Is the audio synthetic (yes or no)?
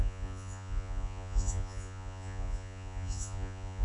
yes